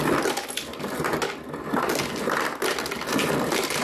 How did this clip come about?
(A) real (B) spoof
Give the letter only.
A